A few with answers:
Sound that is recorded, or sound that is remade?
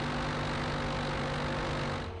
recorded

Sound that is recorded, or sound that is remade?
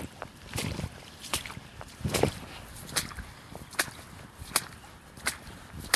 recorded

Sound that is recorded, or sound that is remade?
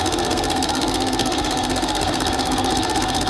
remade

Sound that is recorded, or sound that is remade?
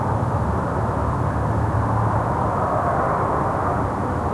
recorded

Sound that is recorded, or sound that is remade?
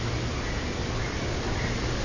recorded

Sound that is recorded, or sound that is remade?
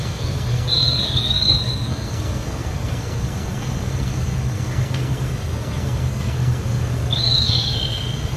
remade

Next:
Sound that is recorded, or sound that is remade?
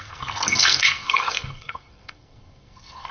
remade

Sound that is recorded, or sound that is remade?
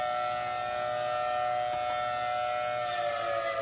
recorded